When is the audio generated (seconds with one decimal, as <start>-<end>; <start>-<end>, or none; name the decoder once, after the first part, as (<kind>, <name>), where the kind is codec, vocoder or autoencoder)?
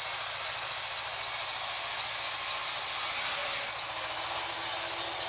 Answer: none